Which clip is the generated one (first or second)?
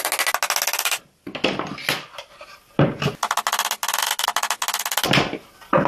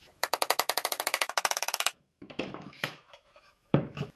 second